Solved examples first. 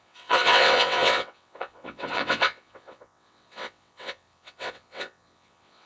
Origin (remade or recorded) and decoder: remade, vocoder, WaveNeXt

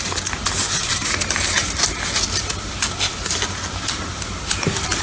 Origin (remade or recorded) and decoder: recorded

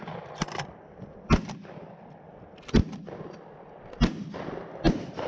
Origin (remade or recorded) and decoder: recorded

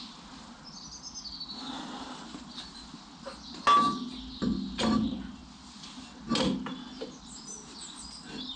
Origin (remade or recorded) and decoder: recorded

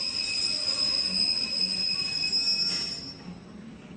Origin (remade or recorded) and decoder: recorded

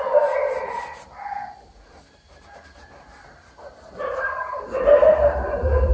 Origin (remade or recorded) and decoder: recorded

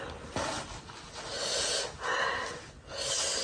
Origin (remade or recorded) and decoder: recorded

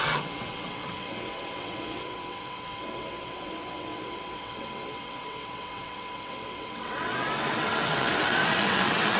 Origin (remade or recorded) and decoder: remade, vocoder, WaveNeXt